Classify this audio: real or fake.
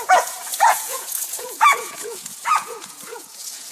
fake